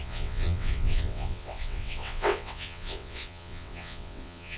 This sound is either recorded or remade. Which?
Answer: remade